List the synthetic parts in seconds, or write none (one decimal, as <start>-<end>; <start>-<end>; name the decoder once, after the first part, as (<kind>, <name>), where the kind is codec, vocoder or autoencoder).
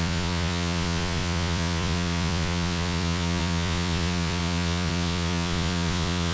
0.0-6.3 (vocoder, Vocos)